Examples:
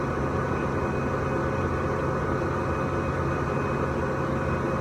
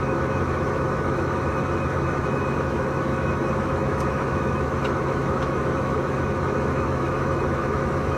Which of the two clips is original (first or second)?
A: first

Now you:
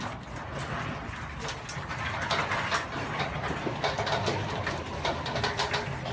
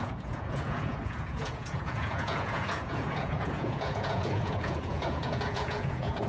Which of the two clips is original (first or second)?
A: first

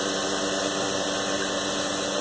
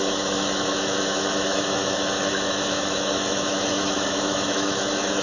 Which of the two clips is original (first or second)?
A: first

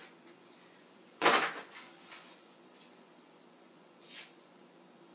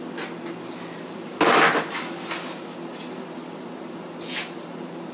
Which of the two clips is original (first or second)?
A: second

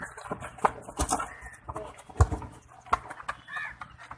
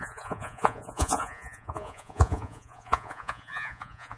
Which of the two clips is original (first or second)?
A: first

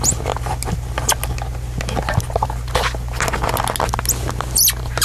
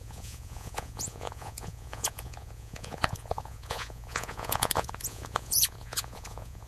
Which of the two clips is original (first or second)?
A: first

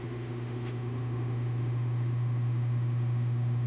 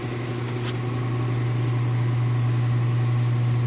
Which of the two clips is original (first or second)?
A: second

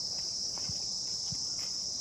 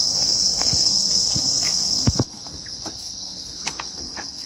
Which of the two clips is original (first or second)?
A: first